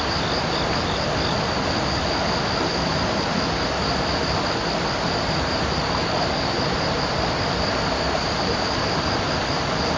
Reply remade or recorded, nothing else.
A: recorded